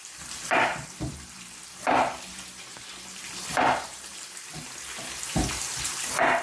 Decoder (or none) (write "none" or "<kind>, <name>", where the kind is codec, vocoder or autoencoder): vocoder, BigVGAN v2